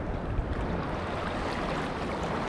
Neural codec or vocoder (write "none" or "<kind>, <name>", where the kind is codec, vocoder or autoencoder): none